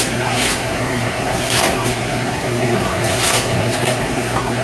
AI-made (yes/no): yes